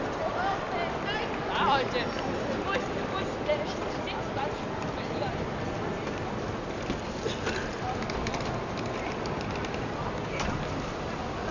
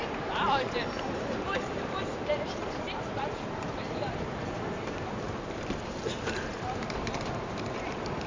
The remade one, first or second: second